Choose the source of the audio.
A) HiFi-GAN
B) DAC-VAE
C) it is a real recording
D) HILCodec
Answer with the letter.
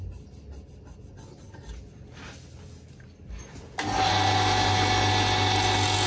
C